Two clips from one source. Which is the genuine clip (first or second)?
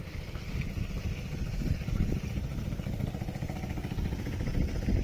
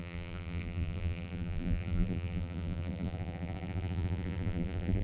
first